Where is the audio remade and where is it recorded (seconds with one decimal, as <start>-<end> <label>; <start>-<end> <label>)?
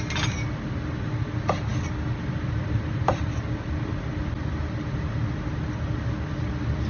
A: 0.0-6.9 recorded